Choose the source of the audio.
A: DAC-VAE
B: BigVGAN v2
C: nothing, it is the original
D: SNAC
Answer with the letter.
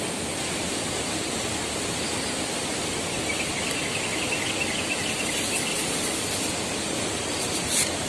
C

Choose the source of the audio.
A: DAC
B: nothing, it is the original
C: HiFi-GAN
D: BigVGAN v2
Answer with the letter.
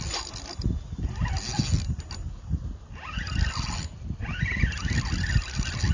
B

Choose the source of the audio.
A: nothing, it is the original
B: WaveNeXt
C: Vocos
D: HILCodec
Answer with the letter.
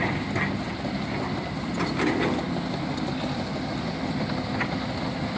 A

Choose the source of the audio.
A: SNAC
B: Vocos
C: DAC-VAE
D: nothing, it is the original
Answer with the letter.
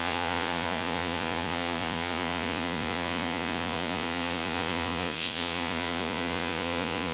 B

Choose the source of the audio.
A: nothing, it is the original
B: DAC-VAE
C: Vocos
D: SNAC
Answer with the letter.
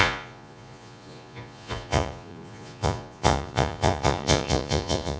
C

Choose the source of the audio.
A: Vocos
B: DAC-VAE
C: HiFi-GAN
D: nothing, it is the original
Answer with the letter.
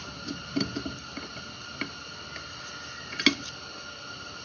D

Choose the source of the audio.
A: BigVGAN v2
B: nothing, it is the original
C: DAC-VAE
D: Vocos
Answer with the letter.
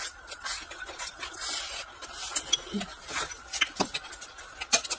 B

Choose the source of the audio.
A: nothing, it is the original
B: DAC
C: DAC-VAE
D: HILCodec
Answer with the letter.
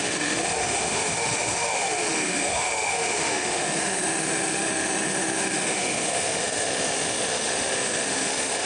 C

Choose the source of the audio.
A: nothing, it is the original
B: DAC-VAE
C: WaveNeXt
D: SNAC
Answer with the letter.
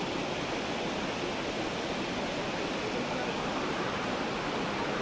A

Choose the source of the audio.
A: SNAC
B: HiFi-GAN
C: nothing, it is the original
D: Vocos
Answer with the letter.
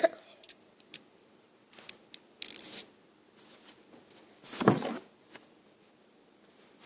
C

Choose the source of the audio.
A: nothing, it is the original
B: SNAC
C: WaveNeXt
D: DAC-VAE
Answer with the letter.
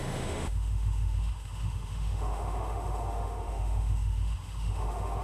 D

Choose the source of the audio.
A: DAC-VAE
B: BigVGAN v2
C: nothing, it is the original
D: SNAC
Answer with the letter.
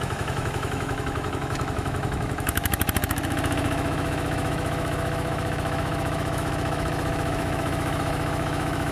A